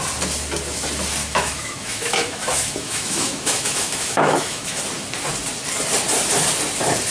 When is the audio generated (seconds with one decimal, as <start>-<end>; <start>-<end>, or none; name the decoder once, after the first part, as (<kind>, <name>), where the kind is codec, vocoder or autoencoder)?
1.2-4.8 (autoencoder, DAC-VAE)